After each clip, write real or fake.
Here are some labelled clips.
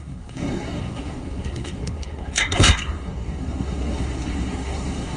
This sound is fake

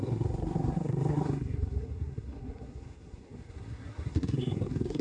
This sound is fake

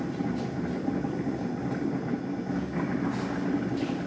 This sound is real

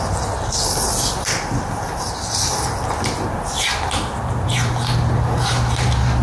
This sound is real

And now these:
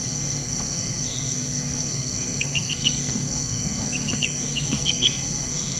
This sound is fake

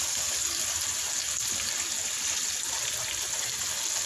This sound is real